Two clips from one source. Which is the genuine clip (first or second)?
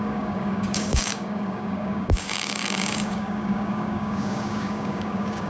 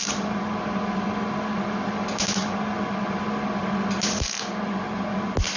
second